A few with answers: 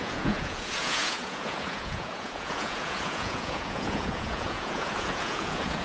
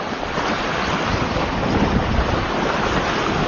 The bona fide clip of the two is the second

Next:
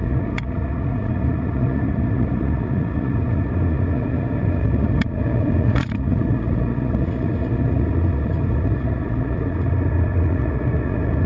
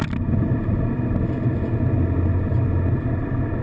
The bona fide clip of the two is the second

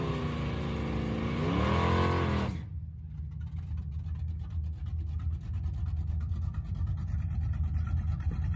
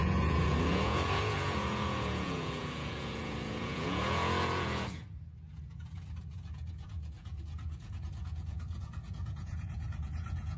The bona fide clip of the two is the first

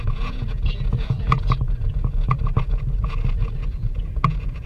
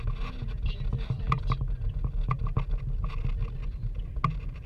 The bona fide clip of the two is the second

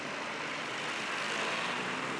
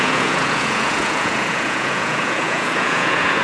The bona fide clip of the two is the first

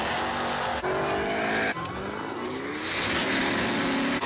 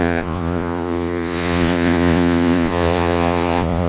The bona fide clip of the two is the first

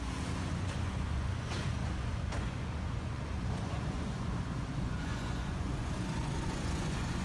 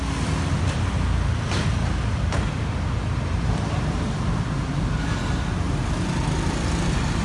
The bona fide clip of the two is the second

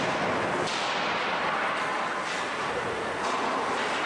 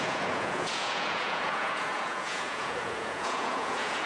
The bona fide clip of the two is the first